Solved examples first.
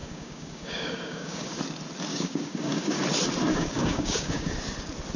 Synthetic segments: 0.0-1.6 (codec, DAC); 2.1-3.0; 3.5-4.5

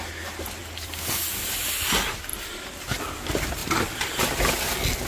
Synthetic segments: none

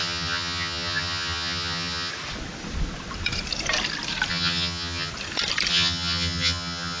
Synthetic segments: 0.0-2.1 (vocoder, HiFi-GAN); 4.3-5.1; 5.7-7.0

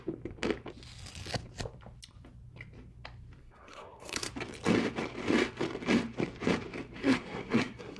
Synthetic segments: 3.4-4.3 (codec, SNAC); 7.0-8.0

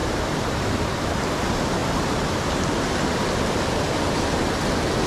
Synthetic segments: 0.0-1.2 (vocoder, BigVGAN v2)

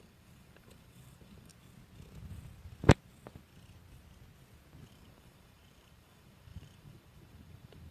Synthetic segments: 0.0-1.5 (vocoder, BigVGAN v2); 4.9-7.9

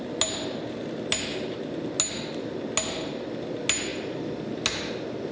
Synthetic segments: none